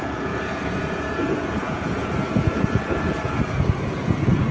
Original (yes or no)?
no